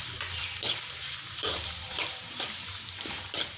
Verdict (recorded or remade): remade